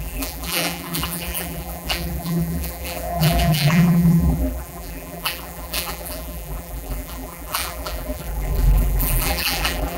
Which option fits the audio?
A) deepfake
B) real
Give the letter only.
A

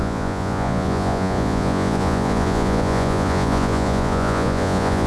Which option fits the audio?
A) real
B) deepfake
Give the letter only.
B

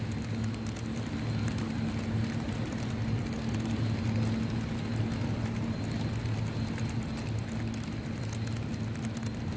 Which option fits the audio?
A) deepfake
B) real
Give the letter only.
B